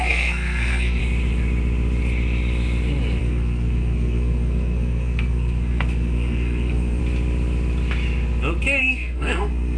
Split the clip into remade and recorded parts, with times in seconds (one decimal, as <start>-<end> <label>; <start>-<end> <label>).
0.0-1.0 remade; 1.0-3.2 recorded; 3.2-7.0 remade; 7.0-8.8 recorded; 8.8-9.8 remade